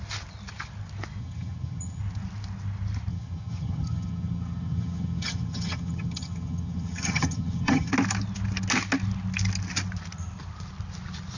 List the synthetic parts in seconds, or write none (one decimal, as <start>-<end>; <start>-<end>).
1.2-2.0; 3.1-7.9